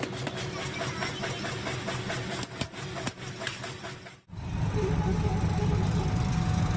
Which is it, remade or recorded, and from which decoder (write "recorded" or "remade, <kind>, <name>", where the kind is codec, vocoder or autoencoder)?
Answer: recorded